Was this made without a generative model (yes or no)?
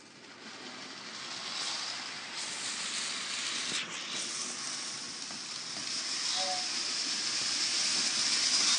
yes